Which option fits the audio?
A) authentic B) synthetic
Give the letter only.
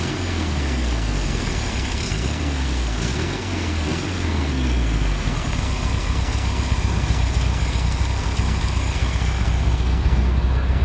B